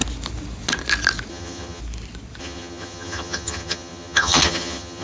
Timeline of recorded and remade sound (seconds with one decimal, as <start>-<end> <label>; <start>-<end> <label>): 0.0-1.3 recorded; 1.3-1.8 remade; 1.8-2.4 recorded; 2.4-5.0 remade